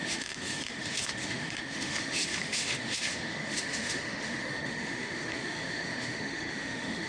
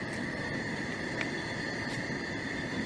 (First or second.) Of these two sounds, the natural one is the second